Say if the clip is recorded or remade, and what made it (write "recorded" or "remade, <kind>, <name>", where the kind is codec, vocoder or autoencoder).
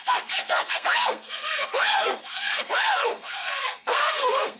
remade, codec, SNAC